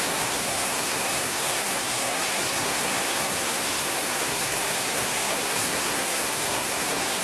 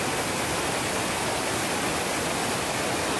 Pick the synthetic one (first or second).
first